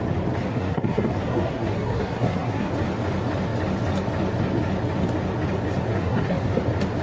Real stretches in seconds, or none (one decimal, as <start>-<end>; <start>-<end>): 0.0-0.5; 2.7-5.9; 6.5-7.0